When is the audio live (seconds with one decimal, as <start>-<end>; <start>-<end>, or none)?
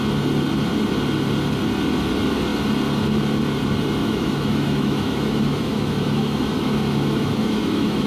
0.0-4.0